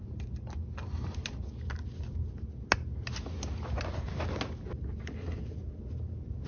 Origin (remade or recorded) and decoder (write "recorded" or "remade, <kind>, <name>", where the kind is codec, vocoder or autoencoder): recorded